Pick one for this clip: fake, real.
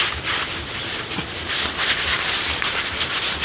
real